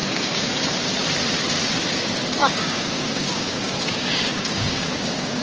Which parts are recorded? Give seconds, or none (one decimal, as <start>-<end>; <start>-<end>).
0.5-2.4